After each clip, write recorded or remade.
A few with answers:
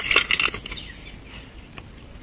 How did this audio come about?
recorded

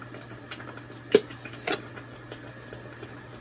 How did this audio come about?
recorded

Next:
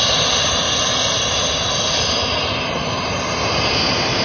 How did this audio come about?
recorded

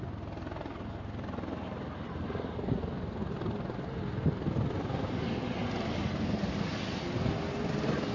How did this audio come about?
recorded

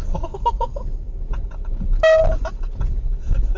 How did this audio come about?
recorded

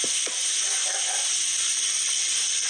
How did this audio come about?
recorded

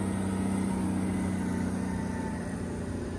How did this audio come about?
recorded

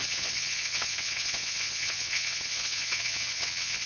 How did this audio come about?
remade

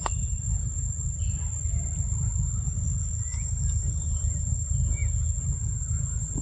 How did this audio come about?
recorded